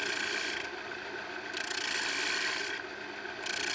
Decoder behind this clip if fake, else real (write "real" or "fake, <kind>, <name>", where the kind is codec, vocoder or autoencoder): real